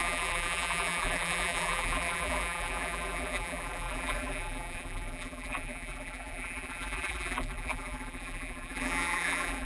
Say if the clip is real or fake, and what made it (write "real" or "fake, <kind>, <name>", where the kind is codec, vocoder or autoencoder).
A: fake, vocoder, BigVGAN v2